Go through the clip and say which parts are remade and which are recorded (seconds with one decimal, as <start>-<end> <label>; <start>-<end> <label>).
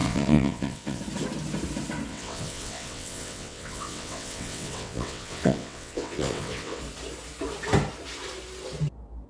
0.0-1.0 remade; 1.0-2.1 recorded; 2.1-6.8 remade; 6.8-9.3 recorded